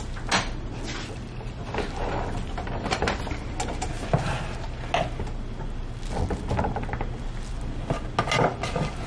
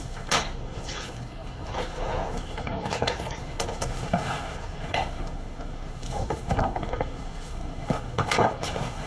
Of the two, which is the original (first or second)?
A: first